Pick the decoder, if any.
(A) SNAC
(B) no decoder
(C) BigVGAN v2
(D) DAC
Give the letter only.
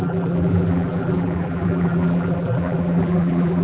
C